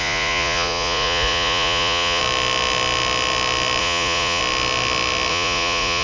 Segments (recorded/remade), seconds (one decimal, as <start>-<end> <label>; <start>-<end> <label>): 0.0-2.2 remade; 2.2-3.8 recorded; 3.8-4.4 remade; 4.4-5.3 recorded; 5.3-6.0 remade